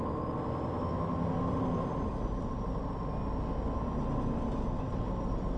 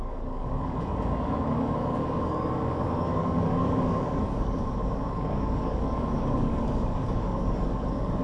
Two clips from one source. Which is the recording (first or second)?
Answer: first